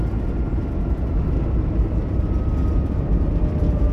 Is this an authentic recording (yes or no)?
yes